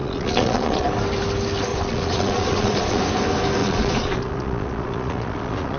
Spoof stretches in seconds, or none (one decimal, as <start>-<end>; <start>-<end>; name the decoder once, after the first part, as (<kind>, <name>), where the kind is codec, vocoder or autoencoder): 0.0-0.9 (vocoder, Vocos); 1.7-3.0; 3.6-5.8